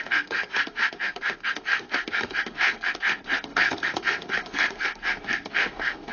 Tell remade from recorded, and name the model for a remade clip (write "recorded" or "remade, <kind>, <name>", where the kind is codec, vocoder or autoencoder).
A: remade, codec, SNAC